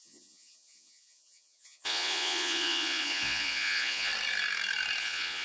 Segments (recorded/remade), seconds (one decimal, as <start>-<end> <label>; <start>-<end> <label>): 0.0-4.1 remade; 4.1-5.0 recorded; 5.0-5.4 remade